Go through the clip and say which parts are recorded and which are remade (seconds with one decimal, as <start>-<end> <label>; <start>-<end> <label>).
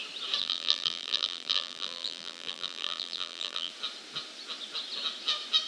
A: 0.0-0.4 recorded; 0.4-3.7 remade; 3.7-5.7 recorded